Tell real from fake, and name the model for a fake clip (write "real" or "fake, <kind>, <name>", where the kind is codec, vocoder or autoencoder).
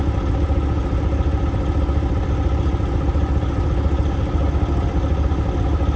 real